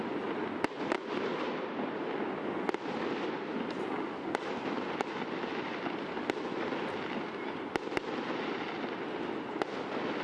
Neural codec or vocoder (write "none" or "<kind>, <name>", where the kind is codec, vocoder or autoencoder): none